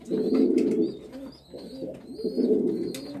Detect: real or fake real